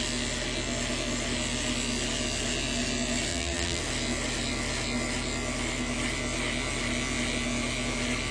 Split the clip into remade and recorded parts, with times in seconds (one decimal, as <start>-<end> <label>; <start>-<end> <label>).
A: 0.0-3.3 recorded; 3.3-3.8 remade; 3.8-8.3 recorded

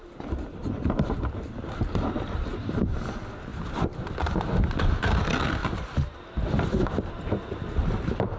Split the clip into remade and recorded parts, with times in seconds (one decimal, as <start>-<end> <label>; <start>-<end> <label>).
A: 0.0-0.6 recorded; 0.6-2.9 remade; 2.9-3.5 recorded; 3.5-4.4 remade; 4.4-5.6 recorded; 5.6-7.3 remade; 7.3-8.4 recorded